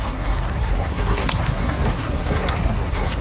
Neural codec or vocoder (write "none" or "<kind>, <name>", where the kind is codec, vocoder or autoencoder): codec, SNAC